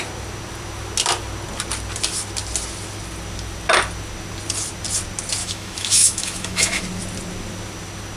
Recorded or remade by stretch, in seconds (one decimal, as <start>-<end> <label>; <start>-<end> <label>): 0.0-5.4 recorded; 5.4-6.8 remade; 6.8-8.2 recorded